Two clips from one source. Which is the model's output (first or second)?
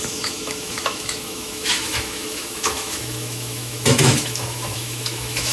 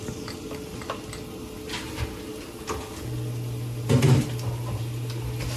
first